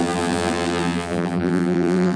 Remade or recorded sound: remade